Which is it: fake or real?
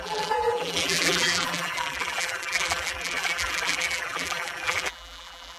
fake